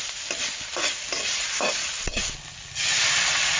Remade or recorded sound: recorded